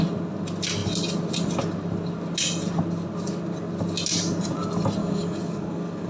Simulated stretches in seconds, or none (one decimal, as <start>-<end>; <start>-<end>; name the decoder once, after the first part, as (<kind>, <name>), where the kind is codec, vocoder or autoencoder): 5.0-6.1 (codec, DAC)